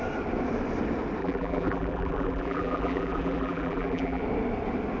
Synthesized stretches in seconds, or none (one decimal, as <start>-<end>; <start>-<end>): 1.2-4.2